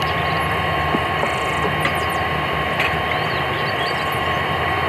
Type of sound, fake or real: fake